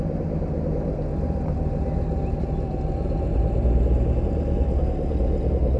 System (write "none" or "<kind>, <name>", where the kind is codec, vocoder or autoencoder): none